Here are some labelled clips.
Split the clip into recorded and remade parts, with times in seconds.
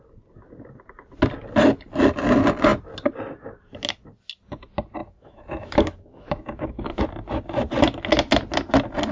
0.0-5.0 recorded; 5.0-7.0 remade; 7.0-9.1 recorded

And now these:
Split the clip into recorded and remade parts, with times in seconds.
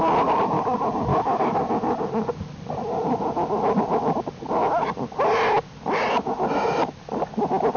0.0-1.1 recorded; 1.1-1.6 remade; 1.6-7.8 recorded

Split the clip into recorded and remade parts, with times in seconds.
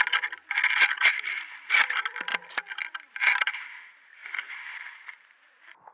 0.0-5.9 recorded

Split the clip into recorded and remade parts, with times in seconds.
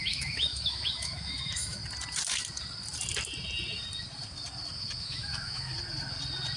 0.0-1.8 remade; 1.8-5.0 recorded; 5.0-5.7 remade; 5.7-6.6 recorded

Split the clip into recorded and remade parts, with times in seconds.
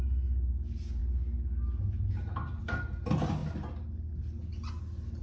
0.0-5.2 recorded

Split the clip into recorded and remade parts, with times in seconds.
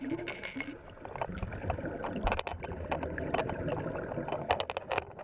0.0-5.2 recorded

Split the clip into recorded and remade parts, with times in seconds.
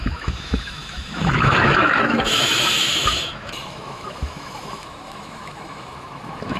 0.0-6.6 remade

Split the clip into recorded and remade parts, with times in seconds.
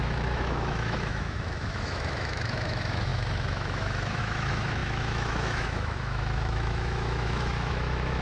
0.0-8.2 remade